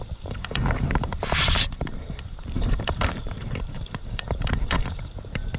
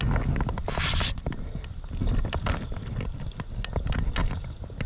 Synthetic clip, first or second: first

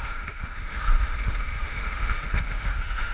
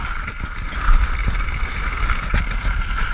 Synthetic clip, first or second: first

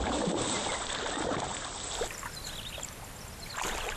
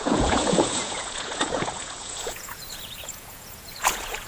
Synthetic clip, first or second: second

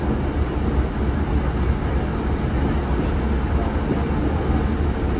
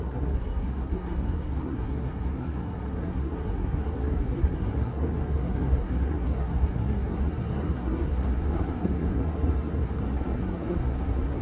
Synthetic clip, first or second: second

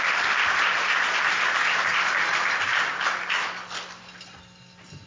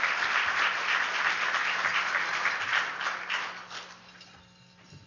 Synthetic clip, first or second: first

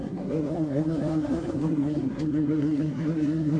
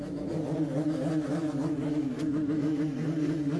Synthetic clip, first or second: first